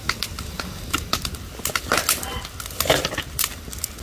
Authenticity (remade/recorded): recorded